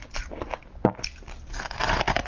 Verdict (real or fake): real